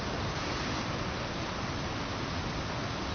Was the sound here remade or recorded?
recorded